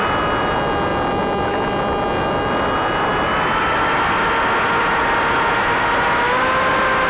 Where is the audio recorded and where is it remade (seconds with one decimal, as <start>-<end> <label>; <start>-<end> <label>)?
0.0-7.1 recorded